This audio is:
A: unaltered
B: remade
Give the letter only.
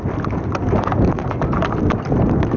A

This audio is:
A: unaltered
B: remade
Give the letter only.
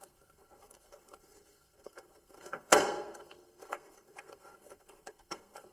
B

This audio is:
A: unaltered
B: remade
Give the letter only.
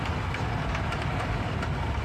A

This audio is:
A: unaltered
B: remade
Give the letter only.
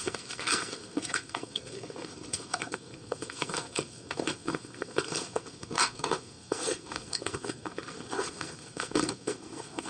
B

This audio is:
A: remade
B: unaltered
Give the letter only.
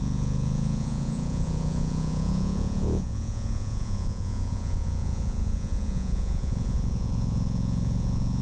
A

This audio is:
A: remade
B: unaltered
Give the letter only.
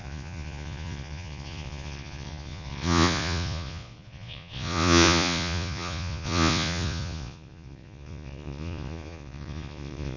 A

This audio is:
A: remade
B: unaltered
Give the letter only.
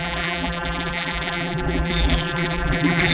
A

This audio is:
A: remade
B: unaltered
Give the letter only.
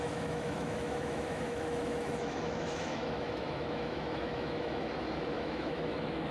A